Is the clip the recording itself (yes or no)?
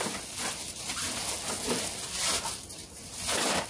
yes